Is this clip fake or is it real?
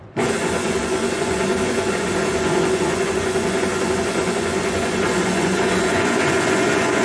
fake